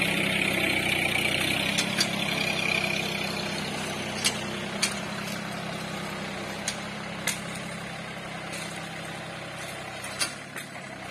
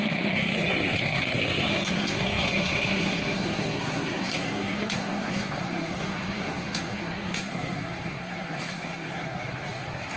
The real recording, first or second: first